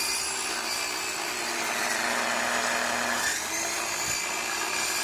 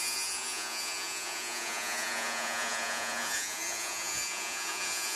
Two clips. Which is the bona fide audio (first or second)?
first